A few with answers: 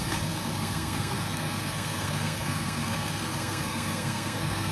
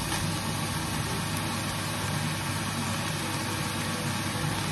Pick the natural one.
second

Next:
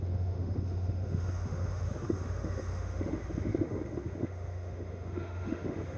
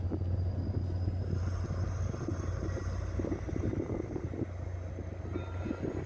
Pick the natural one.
second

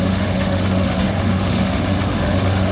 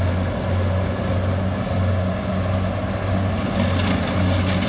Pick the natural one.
second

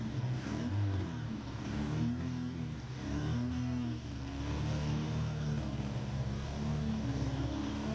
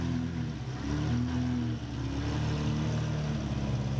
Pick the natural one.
second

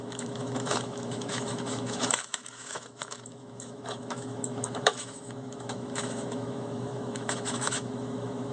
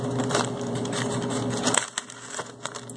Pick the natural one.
second